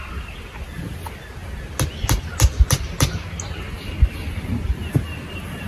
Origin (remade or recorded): recorded